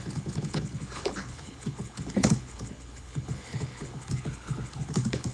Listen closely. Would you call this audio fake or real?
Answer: fake